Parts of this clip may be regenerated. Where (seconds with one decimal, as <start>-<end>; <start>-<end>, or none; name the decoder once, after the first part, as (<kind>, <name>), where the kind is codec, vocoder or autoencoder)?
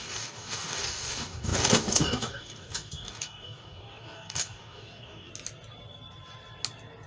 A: 0.0-5.3 (codec, DAC)